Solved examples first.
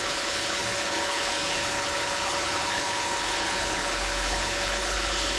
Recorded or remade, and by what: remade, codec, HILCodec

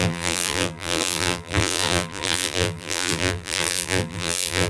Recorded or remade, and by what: remade, vocoder, BigVGAN v2